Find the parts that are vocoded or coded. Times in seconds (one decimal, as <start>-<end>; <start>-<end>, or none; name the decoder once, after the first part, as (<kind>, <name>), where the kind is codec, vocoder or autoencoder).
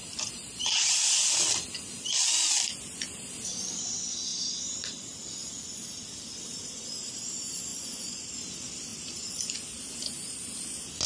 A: 7.7-8.3 (vocoder, Vocos)